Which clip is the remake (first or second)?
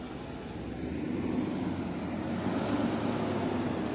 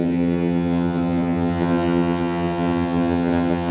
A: second